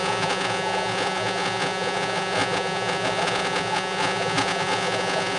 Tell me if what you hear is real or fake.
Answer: fake